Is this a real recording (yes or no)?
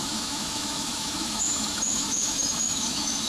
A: no